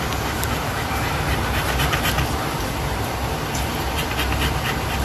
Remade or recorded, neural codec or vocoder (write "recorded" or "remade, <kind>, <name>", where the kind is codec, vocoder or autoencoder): remade, vocoder, BigVGAN v2